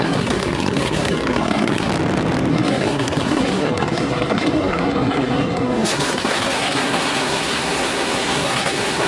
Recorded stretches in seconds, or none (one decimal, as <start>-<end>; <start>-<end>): 1.9-2.5